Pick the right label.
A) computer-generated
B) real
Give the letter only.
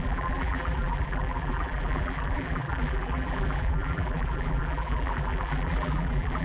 A